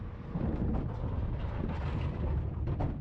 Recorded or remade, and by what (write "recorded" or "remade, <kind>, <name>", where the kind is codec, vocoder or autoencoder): recorded